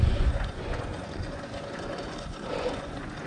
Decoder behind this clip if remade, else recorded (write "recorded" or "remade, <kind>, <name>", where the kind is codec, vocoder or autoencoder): remade, vocoder, Vocos